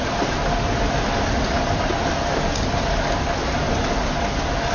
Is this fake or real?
real